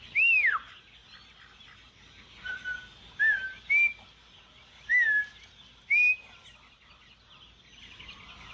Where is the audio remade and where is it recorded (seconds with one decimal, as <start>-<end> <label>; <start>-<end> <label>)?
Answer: 0.0-8.5 recorded